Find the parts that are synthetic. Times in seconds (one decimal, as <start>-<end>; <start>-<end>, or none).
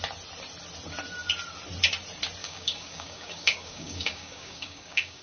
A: 2.4-5.2